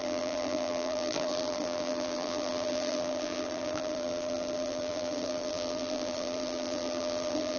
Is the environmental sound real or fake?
fake